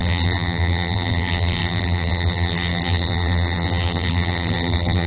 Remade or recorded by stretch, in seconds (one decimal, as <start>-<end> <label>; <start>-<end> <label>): 0.0-5.1 remade